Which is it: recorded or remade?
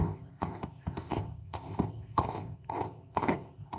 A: remade